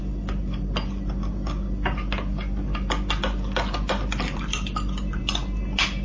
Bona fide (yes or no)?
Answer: yes